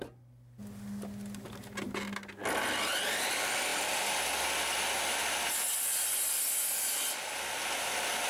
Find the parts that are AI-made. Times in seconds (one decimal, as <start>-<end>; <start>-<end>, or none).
none